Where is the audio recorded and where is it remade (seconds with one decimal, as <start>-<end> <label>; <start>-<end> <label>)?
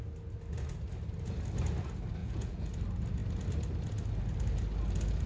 0.0-2.2 recorded; 2.2-2.7 remade; 2.7-5.3 recorded